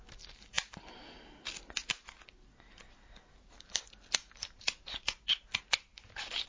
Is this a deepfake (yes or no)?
no